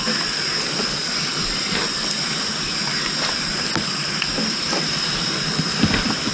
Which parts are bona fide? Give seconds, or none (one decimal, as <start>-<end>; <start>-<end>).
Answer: 1.0-3.9